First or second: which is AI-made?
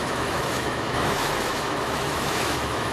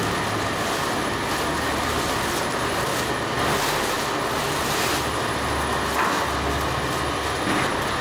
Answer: first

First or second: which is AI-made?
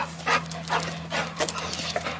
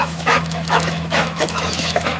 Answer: second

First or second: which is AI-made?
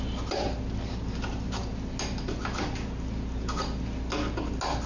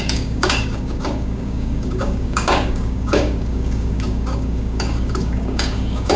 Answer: second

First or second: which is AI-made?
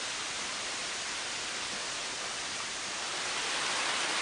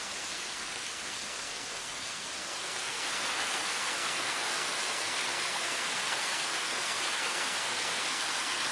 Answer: second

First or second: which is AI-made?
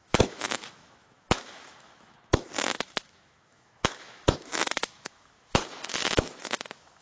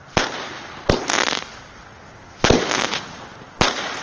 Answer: first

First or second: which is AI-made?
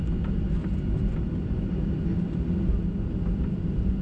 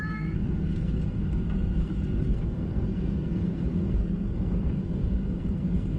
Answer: second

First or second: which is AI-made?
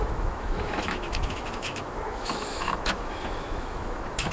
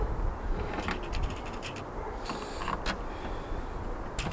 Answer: first